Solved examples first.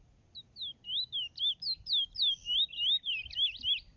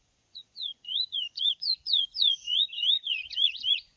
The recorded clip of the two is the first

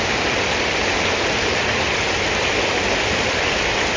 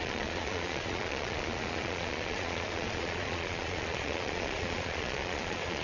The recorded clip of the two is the first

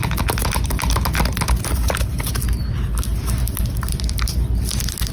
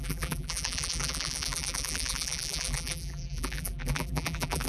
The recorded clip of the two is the first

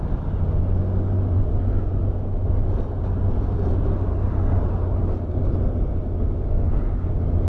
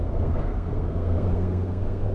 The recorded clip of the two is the first